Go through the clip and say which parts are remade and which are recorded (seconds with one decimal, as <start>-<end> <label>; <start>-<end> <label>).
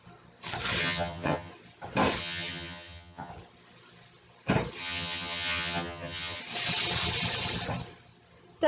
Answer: 0.0-0.8 recorded; 0.8-1.5 remade; 1.5-2.2 recorded; 2.2-3.3 remade; 3.3-4.8 recorded; 4.8-6.4 remade; 6.4-8.7 recorded